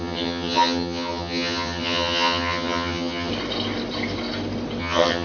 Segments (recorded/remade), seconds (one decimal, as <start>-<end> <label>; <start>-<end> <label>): 0.0-3.3 remade; 3.3-4.8 recorded; 4.8-5.2 remade